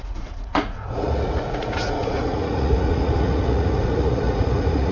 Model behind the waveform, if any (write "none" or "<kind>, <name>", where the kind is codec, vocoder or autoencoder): vocoder, Vocos